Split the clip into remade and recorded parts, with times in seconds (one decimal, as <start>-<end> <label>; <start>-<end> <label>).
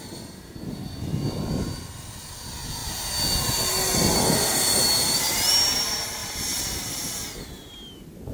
0.0-6.2 recorded; 6.2-6.8 remade; 6.8-8.3 recorded